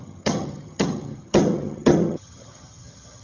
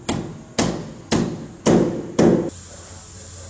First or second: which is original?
second